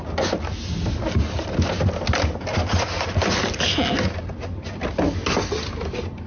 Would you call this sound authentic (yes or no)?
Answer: yes